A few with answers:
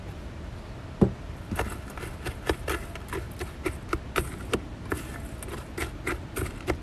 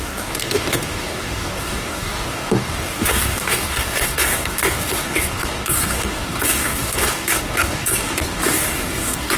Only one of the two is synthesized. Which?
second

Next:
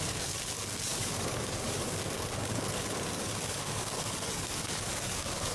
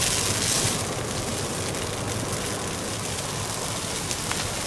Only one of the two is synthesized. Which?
first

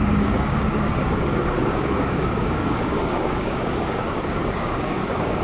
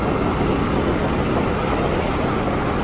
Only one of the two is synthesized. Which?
first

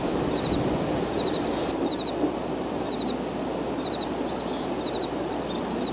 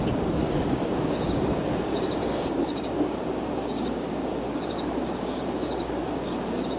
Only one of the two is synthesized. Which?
second